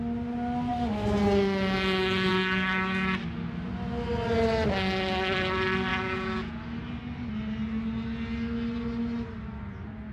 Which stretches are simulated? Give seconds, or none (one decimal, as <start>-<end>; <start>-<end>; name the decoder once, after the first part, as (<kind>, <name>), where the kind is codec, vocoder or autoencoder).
5.9-6.6 (vocoder, Vocos)